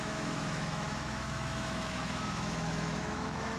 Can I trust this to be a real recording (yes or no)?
no